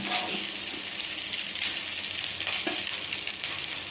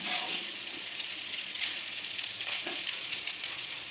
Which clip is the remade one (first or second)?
second